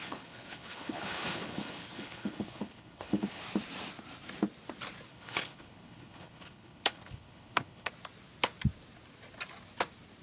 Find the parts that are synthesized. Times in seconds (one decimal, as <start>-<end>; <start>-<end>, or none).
0.0-3.4; 5.1-7.9